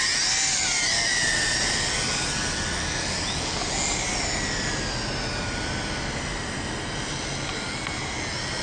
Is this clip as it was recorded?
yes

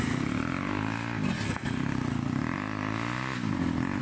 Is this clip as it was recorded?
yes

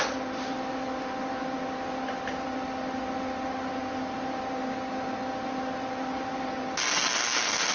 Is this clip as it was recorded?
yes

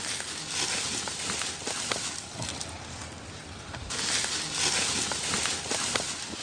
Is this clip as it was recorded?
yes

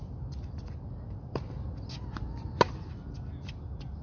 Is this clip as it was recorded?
yes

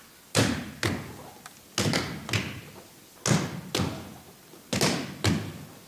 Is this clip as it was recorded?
yes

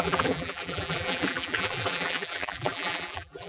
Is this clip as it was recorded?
no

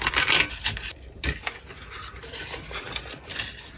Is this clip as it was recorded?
yes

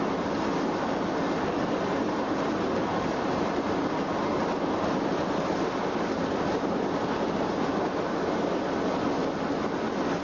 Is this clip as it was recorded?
yes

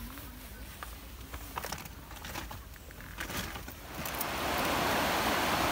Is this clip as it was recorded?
yes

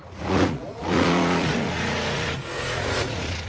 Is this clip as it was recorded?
no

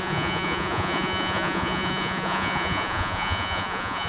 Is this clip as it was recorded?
no